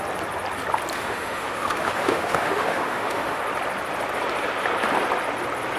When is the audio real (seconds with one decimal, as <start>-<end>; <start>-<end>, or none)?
0.0-0.9; 3.4-5.8